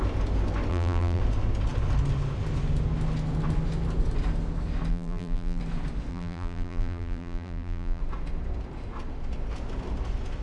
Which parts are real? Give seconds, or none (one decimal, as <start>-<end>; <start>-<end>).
0.0-0.7; 1.2-4.9; 5.6-6.1; 8.0-10.4